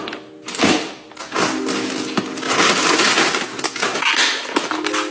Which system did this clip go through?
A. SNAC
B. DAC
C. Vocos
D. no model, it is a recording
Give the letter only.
D